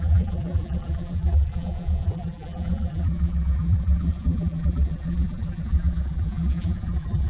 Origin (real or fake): fake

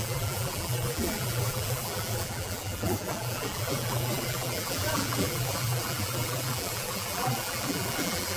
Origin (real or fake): fake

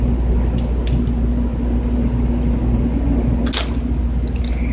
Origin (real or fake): real